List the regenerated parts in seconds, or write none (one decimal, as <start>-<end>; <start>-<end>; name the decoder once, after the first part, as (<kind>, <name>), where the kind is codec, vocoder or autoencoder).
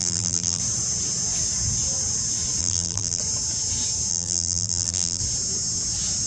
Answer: 0.0-0.6 (vocoder, BigVGAN v2); 2.6-3.2; 4.1-5.2